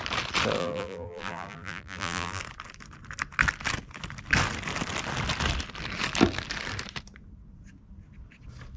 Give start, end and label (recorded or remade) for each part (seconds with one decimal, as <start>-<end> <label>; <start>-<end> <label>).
0.0-0.6 recorded; 0.6-2.4 remade; 2.4-8.8 recorded